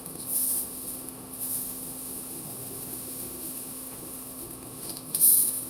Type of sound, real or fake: fake